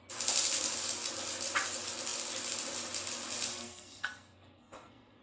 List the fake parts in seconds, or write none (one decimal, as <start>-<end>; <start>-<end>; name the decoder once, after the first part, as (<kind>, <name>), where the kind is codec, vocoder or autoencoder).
3.5-5.2 (codec, SNAC)